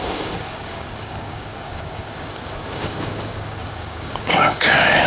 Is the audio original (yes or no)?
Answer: no